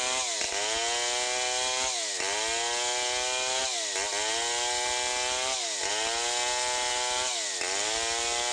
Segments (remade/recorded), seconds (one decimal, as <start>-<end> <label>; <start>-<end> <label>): 0.0-8.5 recorded